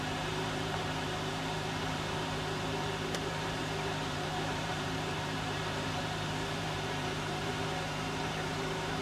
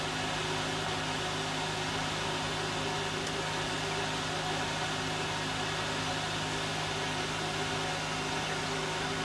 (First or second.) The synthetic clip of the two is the first